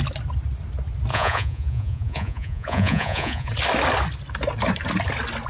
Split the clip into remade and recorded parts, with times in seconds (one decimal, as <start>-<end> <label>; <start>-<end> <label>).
0.0-1.1 recorded; 1.1-3.5 remade; 3.5-5.5 recorded